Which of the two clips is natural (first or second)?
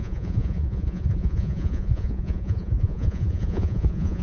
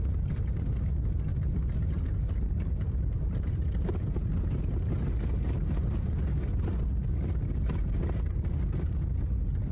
second